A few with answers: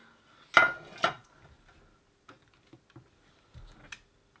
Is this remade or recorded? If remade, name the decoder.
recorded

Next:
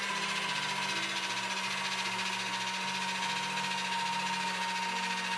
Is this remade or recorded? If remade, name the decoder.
recorded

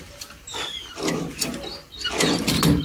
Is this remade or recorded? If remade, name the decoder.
recorded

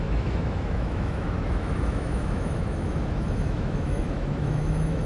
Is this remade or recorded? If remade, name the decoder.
remade, autoencoder, DAC-VAE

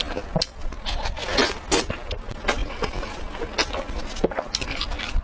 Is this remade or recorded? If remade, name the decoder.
recorded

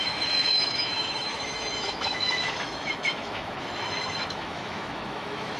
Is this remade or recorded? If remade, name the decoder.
remade, autoencoder, DAC-VAE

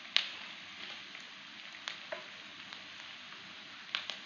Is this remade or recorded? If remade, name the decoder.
recorded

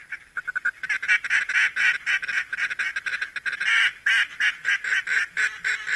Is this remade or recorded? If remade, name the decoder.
recorded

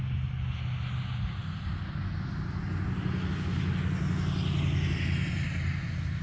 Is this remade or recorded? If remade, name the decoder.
recorded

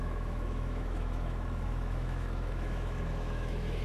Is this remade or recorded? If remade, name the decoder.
remade, autoencoder, DAC-VAE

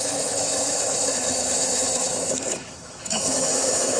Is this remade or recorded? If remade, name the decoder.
remade, autoencoder, DAC-VAE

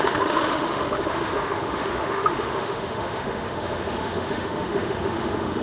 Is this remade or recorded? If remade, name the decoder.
remade, autoencoder, DAC-VAE